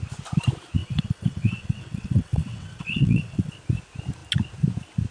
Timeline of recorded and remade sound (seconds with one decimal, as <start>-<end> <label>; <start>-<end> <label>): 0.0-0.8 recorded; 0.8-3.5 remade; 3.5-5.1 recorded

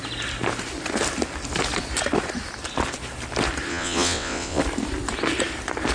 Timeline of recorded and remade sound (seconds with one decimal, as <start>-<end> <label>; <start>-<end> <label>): 0.0-3.7 recorded; 3.7-4.6 remade; 4.6-5.9 recorded

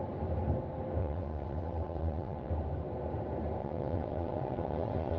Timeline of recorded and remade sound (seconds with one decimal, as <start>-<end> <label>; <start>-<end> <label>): 0.0-1.0 recorded; 1.0-2.5 remade; 2.5-3.6 recorded; 3.6-5.2 remade